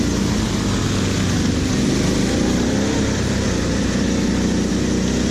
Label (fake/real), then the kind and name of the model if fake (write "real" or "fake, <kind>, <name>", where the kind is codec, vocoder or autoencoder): real